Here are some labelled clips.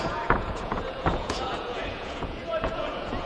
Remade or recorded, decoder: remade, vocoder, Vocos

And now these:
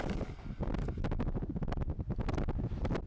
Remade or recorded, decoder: recorded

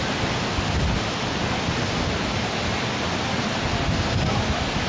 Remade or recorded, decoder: recorded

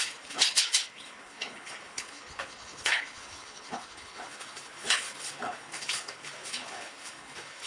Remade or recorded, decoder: remade, codec, HILCodec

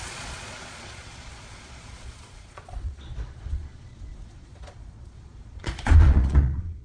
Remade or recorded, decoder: remade, vocoder, Vocos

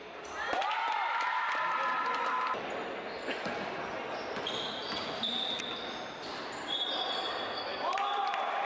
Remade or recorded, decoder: recorded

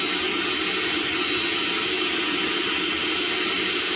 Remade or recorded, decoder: recorded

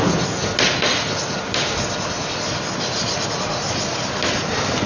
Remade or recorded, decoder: recorded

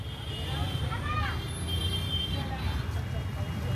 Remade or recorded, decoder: recorded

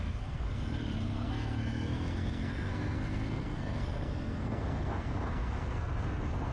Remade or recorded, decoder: remade, codec, SNAC